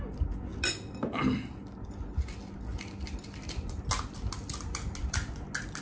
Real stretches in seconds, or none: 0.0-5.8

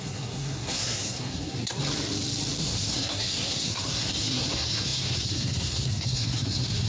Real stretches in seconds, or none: 1.8-2.6

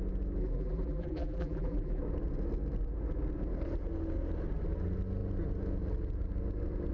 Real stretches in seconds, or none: 0.0-0.4; 2.0-6.9

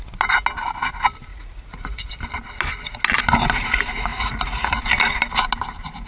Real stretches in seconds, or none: 0.0-1.3; 2.1-4.1; 4.8-6.1

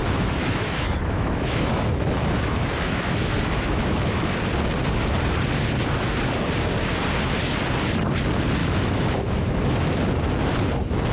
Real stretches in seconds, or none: 4.3-8.6; 10.0-11.1

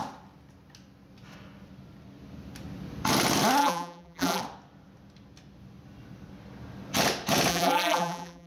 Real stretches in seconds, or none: 0.0-3.6; 4.4-7.5

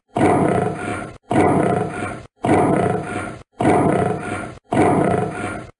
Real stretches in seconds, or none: 0.0-5.8

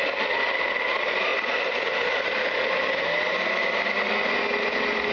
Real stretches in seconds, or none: 0.0-5.1